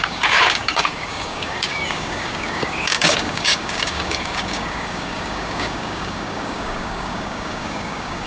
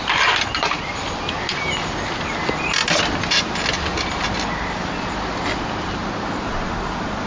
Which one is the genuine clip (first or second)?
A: second